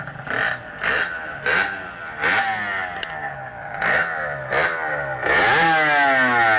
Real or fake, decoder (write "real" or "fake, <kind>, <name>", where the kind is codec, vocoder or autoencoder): real